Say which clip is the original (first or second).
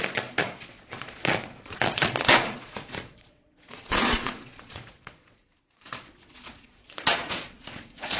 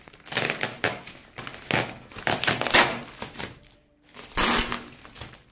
second